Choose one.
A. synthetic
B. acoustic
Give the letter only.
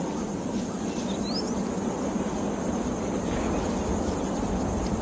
B